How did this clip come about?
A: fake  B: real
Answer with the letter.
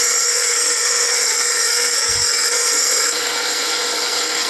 A